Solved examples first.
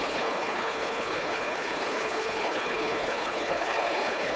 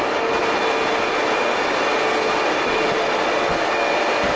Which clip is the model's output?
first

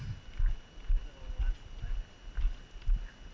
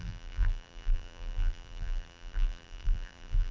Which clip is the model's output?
second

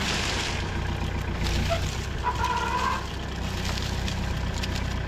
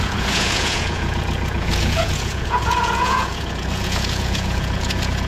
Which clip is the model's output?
second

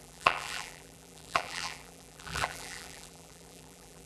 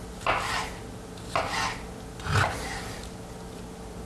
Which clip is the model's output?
first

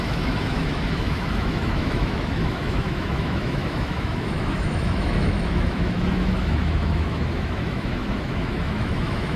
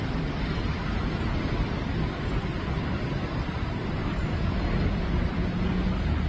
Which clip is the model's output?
first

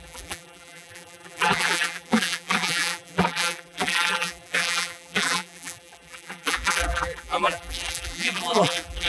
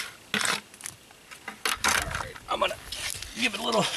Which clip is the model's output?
first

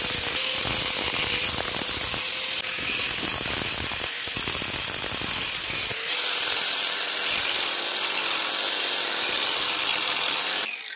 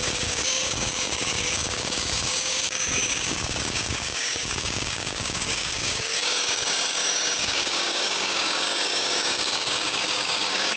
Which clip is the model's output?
second